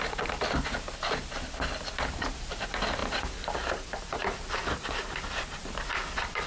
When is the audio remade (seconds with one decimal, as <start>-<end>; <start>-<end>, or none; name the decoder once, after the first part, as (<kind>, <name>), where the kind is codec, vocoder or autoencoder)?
none